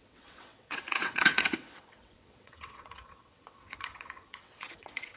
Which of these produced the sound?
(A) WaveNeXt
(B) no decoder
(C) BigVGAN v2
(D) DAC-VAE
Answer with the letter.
A